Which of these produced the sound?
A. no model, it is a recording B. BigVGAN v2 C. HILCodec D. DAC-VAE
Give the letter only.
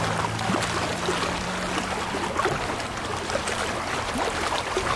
A